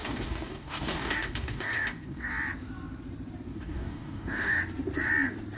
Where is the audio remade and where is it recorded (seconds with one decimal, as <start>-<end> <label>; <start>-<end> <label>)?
0.0-2.3 remade; 2.3-3.5 recorded; 3.5-4.6 remade; 4.6-5.6 recorded